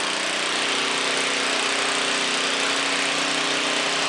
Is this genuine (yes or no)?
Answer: yes